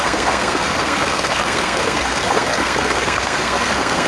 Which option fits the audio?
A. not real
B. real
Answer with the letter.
A